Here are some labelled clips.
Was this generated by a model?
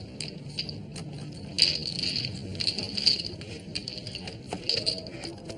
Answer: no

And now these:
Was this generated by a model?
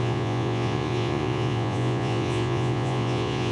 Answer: yes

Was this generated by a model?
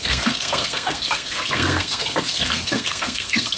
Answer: yes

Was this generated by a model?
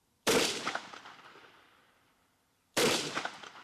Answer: yes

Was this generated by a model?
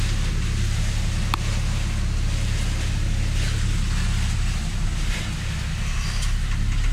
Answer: no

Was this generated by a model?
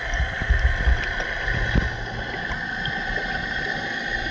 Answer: no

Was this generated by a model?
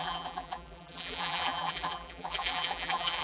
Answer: yes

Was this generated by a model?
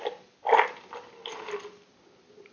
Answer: no